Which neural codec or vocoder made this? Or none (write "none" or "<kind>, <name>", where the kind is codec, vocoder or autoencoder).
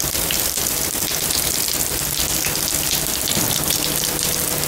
none